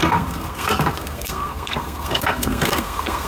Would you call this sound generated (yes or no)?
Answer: yes